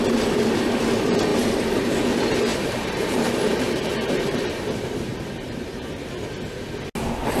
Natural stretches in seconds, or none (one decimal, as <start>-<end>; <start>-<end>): 0.0-1.3; 1.9-2.5; 6.0-7.4